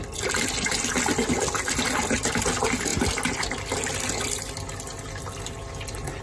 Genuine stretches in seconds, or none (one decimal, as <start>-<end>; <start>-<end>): 0.0-6.2